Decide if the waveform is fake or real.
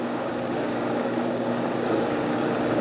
fake